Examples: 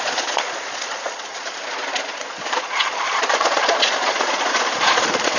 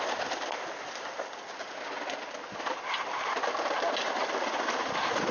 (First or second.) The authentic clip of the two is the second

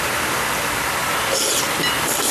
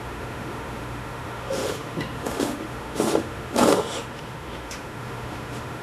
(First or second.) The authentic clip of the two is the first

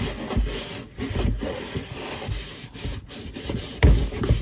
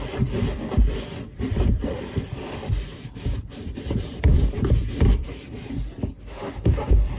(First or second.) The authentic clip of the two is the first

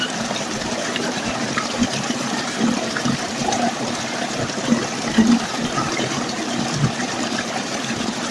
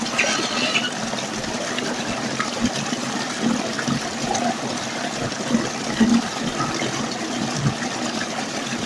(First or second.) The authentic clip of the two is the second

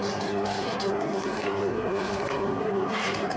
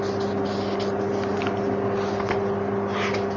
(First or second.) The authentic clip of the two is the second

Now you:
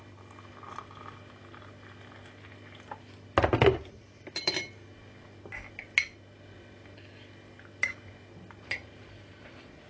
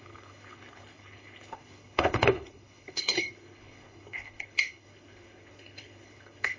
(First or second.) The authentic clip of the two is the first